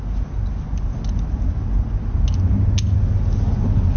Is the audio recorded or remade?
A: recorded